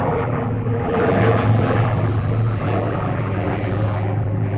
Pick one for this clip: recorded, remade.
remade